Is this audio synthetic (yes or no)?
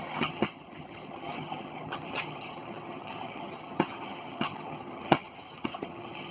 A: yes